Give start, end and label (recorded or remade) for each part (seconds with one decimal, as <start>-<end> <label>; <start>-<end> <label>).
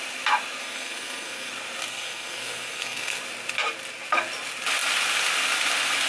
0.0-0.6 recorded; 0.6-1.5 remade; 1.5-1.9 recorded; 1.9-3.2 remade; 3.2-6.1 recorded